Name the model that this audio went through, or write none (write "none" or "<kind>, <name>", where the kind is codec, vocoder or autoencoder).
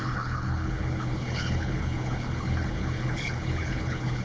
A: codec, HILCodec